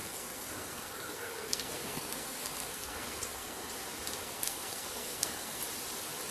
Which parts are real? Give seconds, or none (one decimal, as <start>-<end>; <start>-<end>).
3.7-4.2; 5.6-6.3